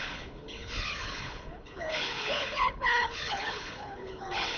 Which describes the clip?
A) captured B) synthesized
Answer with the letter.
B